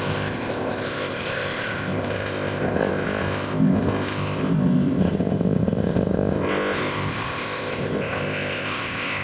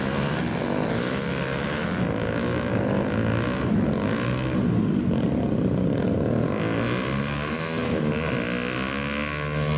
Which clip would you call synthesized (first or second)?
first